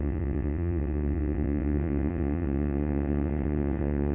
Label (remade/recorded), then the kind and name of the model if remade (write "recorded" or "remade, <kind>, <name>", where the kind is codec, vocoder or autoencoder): remade, vocoder, WaveNeXt